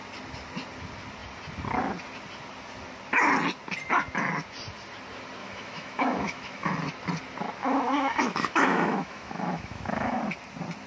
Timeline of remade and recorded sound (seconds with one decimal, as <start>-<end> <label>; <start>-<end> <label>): 0.0-5.4 recorded; 5.4-6.7 remade; 6.7-7.6 recorded; 7.6-10.2 remade; 10.2-10.9 recorded